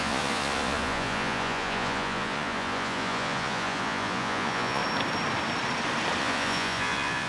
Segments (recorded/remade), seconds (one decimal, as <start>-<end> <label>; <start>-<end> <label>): 0.0-4.8 remade; 4.8-6.2 recorded; 6.2-7.3 remade